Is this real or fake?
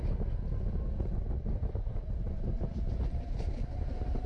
real